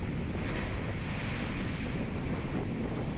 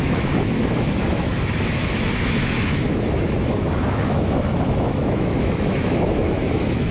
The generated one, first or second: second